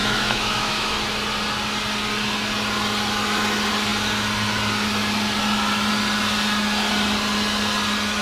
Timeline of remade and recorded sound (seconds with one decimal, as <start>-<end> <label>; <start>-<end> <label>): 0.0-0.9 remade; 0.9-8.2 recorded